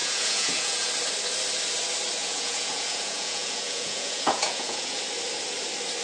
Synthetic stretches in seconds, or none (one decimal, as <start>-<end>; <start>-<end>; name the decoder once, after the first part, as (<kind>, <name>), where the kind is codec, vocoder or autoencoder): 0.0-0.9 (vocoder, Vocos); 2.2-5.0